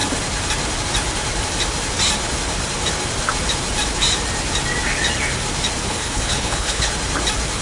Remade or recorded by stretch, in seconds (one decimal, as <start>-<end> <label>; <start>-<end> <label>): 0.0-5.8 recorded; 5.8-6.9 remade; 6.9-7.6 recorded